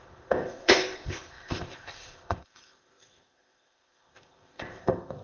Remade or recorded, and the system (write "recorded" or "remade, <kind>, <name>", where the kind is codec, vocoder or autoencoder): remade, codec, ZipCodec